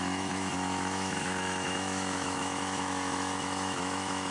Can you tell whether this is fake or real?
fake